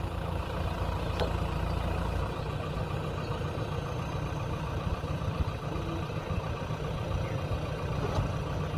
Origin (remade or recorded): recorded